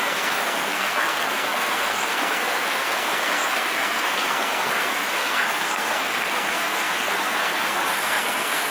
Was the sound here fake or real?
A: fake